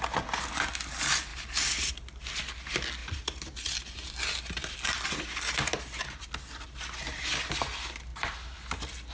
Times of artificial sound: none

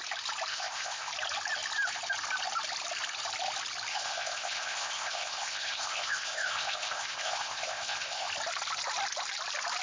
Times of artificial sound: 0.5-1.1 (codec, ZipCodec); 3.9-8.3

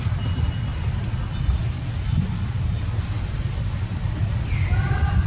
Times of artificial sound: none

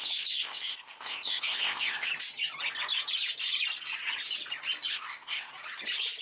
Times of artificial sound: 0.0-2.1 (codec, ZipCodec); 4.9-5.5

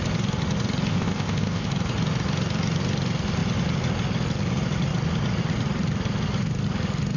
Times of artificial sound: 0.9-1.7 (codec, ZipCodec)

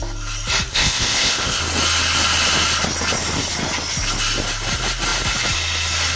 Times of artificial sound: 0.7-1.6 (codec, ZipCodec)

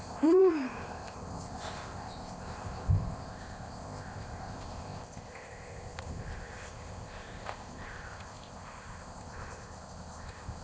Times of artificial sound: 0.0-10.6 (codec, ZipCodec)

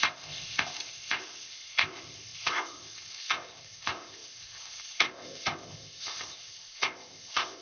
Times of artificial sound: 0.0-7.6 (codec, ZipCodec)